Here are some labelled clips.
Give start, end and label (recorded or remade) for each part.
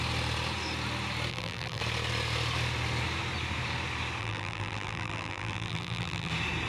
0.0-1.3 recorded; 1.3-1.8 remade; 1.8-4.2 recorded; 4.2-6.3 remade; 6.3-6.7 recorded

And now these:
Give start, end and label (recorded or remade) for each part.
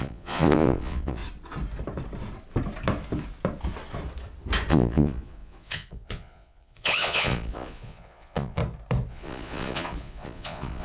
0.0-1.2 remade; 1.2-4.7 recorded; 4.7-8.6 remade; 8.6-9.1 recorded; 9.1-10.8 remade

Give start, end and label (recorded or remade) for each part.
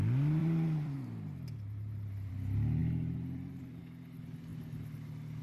0.0-0.4 recorded; 0.4-2.3 remade; 2.3-2.8 recorded; 2.8-3.8 remade; 3.8-5.4 recorded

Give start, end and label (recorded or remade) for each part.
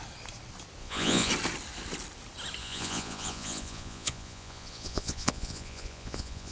0.0-0.8 recorded; 0.8-1.3 remade; 1.3-2.6 recorded; 2.6-6.5 remade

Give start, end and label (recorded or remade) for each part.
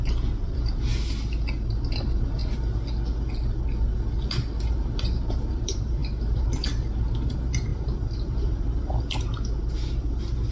0.0-0.9 remade; 0.9-1.7 recorded; 1.7-2.4 remade; 2.4-4.6 recorded; 4.6-10.5 remade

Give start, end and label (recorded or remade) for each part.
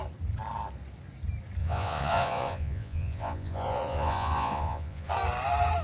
0.0-1.6 recorded; 1.6-5.1 remade; 5.1-5.8 recorded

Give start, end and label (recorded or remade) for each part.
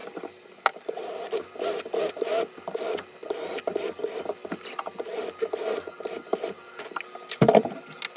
0.0-2.1 remade; 2.1-8.2 recorded